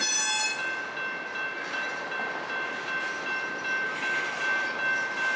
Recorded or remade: recorded